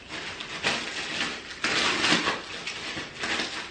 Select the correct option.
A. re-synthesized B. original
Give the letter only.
B